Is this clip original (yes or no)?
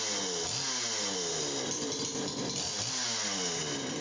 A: yes